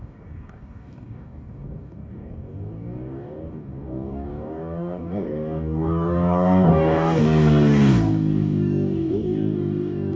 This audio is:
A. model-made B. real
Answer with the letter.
A